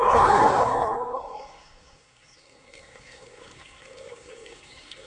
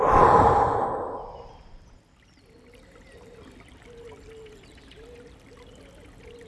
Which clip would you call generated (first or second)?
first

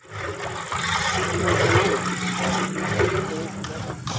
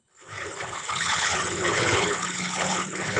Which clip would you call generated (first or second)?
second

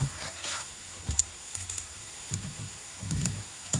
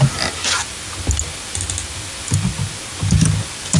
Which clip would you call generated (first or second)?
first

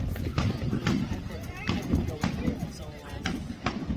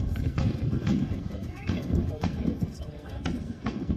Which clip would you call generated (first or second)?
second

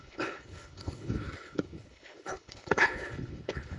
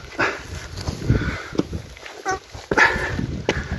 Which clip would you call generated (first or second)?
first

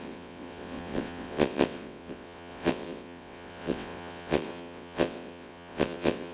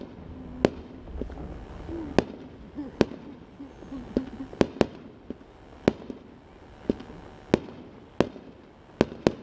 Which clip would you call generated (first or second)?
first